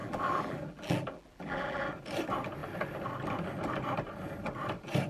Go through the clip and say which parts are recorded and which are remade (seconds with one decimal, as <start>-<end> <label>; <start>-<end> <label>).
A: 0.0-1.8 remade; 1.8-5.1 recorded